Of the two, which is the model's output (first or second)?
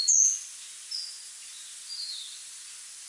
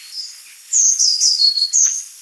second